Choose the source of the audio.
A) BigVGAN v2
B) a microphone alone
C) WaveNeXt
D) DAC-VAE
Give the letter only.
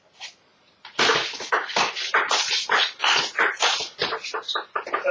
B